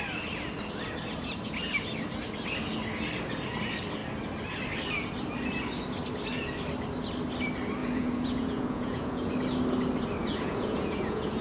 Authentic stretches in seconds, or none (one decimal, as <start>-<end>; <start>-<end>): 0.0-7.8; 9.3-10.2